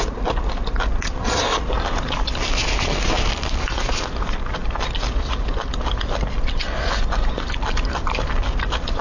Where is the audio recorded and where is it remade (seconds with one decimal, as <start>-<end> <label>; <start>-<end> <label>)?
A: 0.0-9.0 recorded

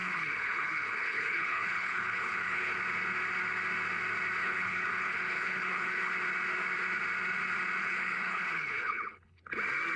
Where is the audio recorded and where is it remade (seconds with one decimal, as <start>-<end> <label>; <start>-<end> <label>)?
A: 0.0-2.8 remade; 2.8-4.4 recorded; 4.4-6.1 remade; 6.1-7.8 recorded; 7.8-9.4 remade; 9.4-10.0 recorded

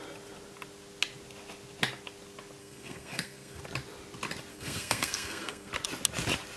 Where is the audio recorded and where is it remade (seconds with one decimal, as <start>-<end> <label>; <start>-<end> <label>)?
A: 0.0-2.6 recorded; 2.6-3.6 remade; 3.6-4.5 recorded; 4.5-5.7 remade; 5.7-6.6 recorded

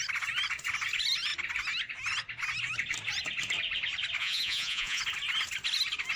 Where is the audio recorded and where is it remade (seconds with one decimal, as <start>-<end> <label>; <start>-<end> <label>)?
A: 0.0-4.2 recorded; 4.2-5.0 remade; 5.0-6.2 recorded

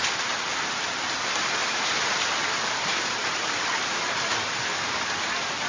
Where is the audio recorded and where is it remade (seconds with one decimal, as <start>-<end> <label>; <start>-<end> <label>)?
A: 0.0-1.6 recorded; 1.6-5.0 remade; 5.0-5.7 recorded

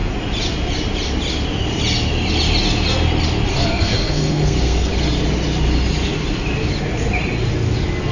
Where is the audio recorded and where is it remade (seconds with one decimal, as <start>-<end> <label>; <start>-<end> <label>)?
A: 0.0-3.5 recorded; 3.5-4.9 remade; 4.9-8.1 recorded